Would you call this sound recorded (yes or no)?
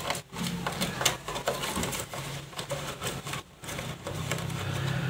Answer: yes